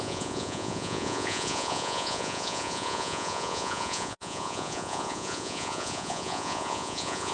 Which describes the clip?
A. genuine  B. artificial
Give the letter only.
B